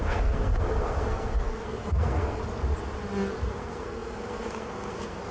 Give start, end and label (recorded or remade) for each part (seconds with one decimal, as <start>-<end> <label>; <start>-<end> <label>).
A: 0.0-2.4 remade; 2.4-3.5 recorded; 3.5-5.3 remade